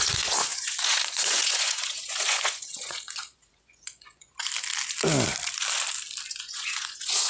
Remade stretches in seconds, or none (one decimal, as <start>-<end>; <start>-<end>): 0.0-4.3; 6.3-7.3